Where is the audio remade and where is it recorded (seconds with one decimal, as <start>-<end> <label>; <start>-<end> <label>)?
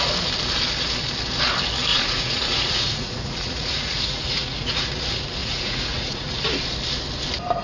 0.0-1.9 recorded; 1.9-4.9 remade; 4.9-5.4 recorded; 5.4-6.4 remade; 6.4-7.6 recorded